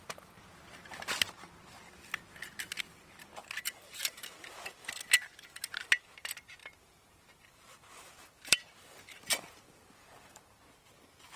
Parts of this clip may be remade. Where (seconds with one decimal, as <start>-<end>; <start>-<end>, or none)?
3.4-4.9; 6.6-10.4